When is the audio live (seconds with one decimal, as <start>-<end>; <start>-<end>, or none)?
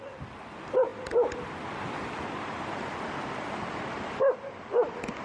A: 0.0-5.2